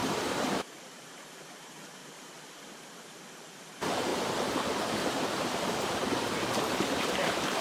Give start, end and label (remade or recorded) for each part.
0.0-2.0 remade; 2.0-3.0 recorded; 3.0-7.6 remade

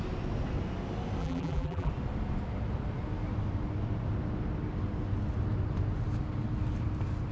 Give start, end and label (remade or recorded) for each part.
0.0-1.2 recorded; 1.2-1.9 remade; 1.9-7.3 recorded